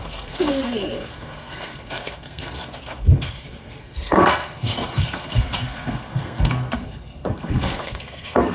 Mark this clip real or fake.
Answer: fake